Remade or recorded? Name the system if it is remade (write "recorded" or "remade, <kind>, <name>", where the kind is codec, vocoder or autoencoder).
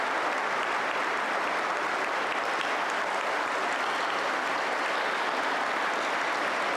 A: recorded